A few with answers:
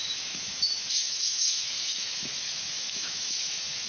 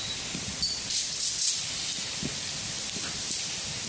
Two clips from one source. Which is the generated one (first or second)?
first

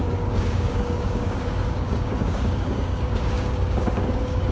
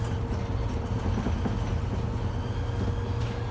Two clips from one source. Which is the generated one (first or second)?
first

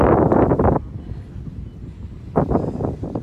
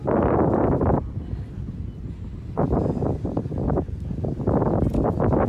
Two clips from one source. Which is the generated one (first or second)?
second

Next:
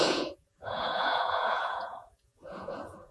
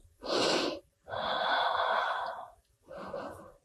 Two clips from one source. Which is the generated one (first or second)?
first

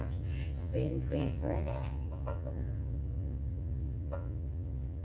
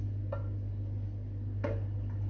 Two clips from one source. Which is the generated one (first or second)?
first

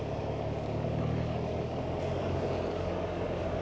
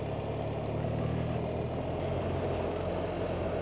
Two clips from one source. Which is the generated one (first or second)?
first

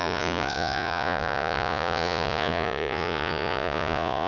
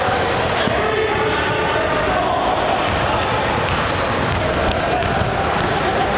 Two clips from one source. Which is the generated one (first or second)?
first